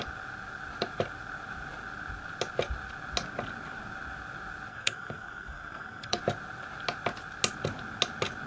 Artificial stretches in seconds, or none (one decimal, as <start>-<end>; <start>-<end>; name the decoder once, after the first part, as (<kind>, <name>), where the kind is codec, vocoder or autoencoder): 4.7-6.2 (codec, SNAC)

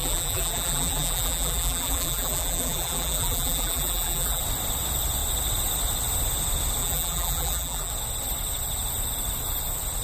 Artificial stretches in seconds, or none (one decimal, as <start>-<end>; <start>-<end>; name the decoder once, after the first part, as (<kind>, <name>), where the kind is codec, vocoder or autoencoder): 0.0-4.4 (vocoder, BigVGAN v2); 6.8-7.9

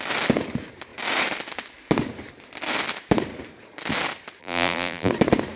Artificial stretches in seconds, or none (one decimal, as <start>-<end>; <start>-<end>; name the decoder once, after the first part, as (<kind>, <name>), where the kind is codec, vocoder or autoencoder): 4.4-5.1 (vocoder, BigVGAN v2)

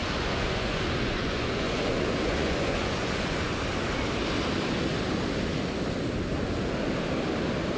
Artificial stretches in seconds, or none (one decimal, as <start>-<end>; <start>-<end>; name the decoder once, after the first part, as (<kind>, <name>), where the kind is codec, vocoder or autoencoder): 0.0-3.6 (vocoder, Vocos)